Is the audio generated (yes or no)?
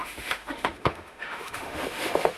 yes